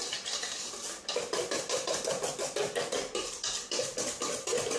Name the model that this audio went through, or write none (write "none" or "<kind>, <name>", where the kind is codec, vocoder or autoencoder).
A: none